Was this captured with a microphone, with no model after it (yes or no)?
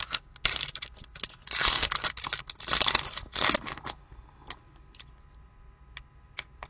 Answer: yes